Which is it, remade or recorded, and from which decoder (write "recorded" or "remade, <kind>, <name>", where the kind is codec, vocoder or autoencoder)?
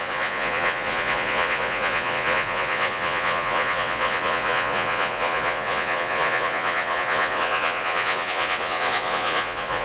remade, vocoder, Vocos